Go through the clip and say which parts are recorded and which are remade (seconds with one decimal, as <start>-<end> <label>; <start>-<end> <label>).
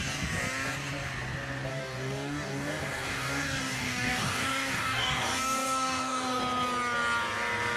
0.0-1.7 recorded; 1.7-6.4 remade; 6.4-7.8 recorded